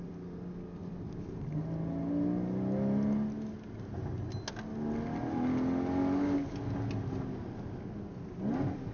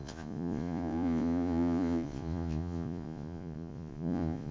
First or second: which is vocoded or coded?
second